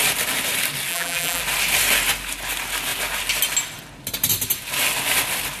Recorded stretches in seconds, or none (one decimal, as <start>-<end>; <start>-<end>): 0.0-0.9; 1.4-5.6